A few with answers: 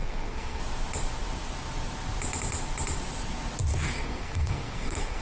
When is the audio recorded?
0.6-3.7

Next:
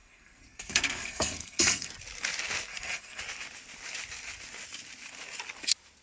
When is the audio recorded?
1.9-2.7; 3.2-6.0

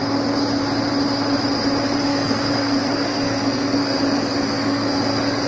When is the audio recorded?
0.0-2.1

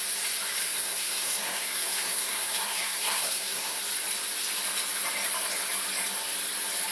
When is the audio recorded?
0.0-0.6; 3.8-6.9